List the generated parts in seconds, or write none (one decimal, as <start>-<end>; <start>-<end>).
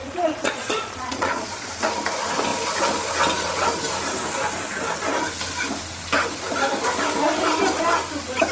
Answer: 0.0-1.7